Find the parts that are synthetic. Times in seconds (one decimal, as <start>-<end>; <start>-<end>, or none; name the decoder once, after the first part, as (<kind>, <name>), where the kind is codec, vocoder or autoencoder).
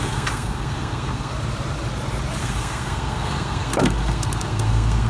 0.0-1.3 (codec, SNAC); 2.4-5.1